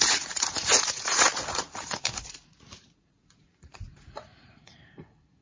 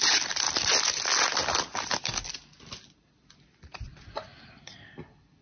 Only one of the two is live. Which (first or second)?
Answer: second